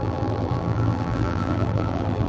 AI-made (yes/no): yes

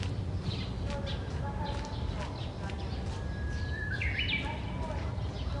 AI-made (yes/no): no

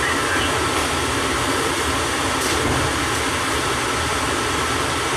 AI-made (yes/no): no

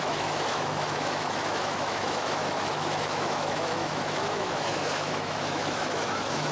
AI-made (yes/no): yes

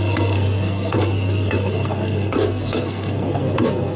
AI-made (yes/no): yes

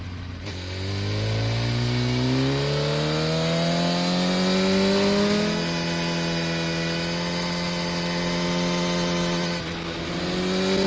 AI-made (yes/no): no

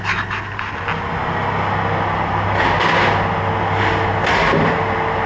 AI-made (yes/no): no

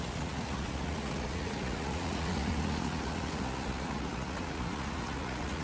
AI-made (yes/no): yes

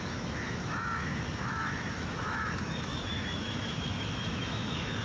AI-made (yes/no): yes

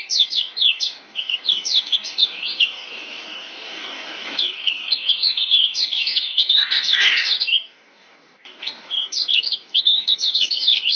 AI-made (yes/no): yes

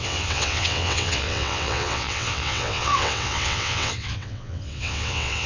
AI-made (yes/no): yes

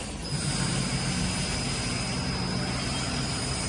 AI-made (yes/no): no